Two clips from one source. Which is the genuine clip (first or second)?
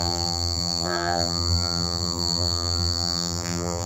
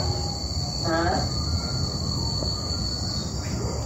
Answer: second